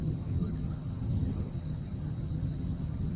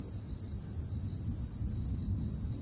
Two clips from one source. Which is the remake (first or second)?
first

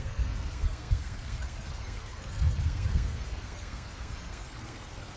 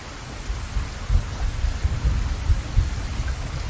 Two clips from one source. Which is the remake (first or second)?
first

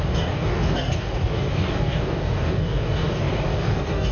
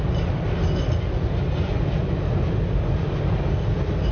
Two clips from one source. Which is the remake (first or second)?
first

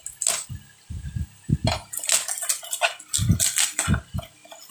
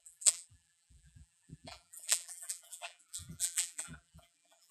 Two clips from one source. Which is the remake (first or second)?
second